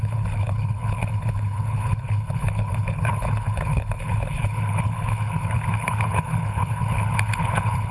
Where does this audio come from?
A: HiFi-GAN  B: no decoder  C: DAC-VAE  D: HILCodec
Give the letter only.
D